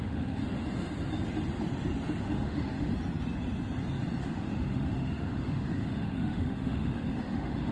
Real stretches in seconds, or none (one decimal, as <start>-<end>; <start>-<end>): 0.4-2.2; 2.9-4.2